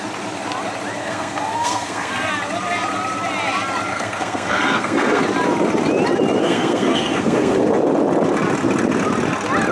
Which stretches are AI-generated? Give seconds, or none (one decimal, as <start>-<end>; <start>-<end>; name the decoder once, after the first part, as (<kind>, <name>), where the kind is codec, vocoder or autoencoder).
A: 1.0-2.3 (codec, SNAC); 3.9-5.2; 6.4-7.7